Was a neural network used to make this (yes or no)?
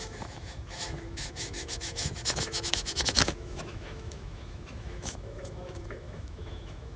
yes